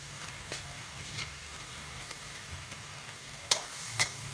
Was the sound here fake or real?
fake